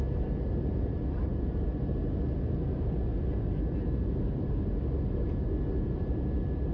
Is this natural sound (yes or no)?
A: yes